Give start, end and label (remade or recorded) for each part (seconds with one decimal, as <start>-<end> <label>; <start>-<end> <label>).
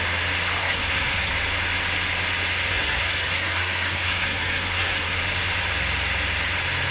0.0-0.6 recorded; 0.6-1.3 remade; 1.3-2.7 recorded; 2.7-5.2 remade; 5.2-6.9 recorded